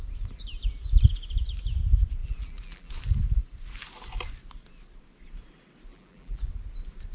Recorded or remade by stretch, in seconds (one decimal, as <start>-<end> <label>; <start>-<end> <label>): 0.0-2.2 recorded; 2.2-2.9 remade; 2.9-5.9 recorded; 5.9-6.5 remade; 6.5-7.1 recorded